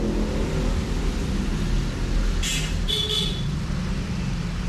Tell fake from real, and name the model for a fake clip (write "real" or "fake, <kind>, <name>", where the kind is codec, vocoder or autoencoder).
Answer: real